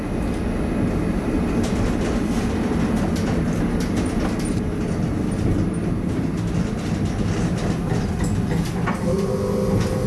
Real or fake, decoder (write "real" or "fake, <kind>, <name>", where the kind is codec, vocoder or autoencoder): real